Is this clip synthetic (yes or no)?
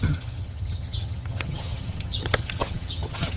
yes